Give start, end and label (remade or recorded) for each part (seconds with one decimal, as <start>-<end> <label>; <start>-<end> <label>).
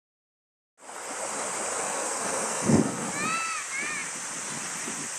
0.0-1.8 recorded; 1.8-3.1 remade; 3.1-5.2 recorded